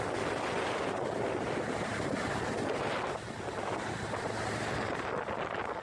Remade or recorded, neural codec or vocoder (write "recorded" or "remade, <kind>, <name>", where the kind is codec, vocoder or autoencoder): recorded